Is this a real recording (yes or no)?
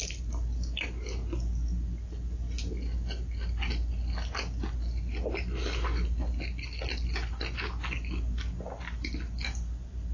yes